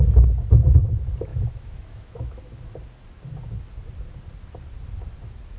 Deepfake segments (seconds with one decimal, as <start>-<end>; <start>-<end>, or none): 1.3-2.4